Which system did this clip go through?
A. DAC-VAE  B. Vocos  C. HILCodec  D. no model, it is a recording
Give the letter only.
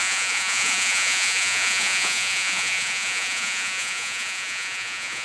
B